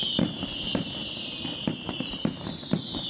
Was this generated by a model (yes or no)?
yes